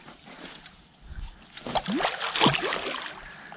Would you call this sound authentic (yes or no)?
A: yes